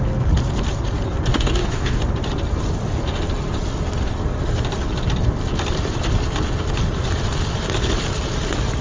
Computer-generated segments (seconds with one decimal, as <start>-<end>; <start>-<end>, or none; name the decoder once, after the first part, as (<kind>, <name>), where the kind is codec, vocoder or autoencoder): 1.3-2.0 (codec, DAC)